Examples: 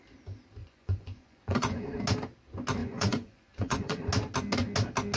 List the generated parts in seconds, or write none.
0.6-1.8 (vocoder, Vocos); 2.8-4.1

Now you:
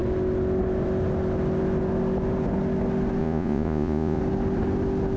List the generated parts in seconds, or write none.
3.2-4.2 (vocoder, Vocos)

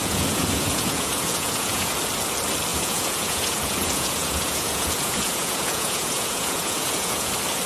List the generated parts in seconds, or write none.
0.0-2.0 (vocoder, Vocos); 2.7-7.3

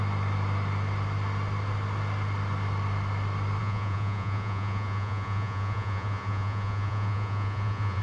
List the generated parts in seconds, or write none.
3.6-8.0 (vocoder, Vocos)